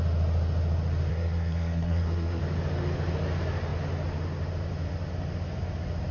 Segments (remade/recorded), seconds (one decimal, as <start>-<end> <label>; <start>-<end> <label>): 0.0-1.1 recorded; 1.1-2.4 remade; 2.4-6.1 recorded